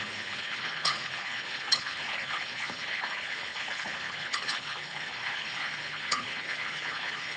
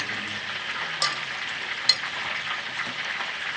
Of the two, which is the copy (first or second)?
first